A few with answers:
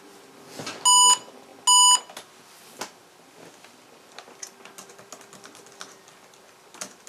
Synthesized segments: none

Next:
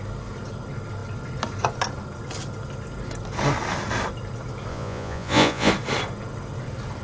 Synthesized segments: 4.7-5.7 (vocoder, Vocos)

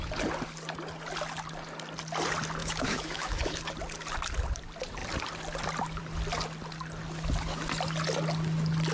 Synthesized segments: 2.6-3.6 (autoencoder, DAC-VAE)